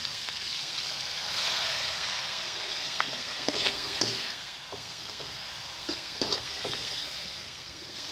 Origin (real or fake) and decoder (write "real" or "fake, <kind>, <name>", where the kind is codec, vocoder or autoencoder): fake, codec, SNAC